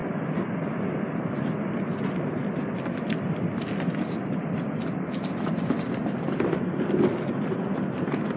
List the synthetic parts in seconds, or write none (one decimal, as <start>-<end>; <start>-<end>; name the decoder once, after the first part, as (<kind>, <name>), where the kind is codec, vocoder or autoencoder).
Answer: none